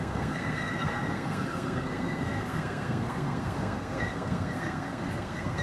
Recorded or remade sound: remade